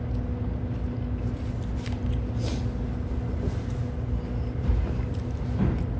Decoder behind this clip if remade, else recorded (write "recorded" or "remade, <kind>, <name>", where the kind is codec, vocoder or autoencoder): recorded